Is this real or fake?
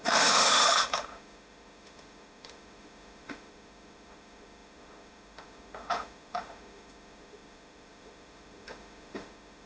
fake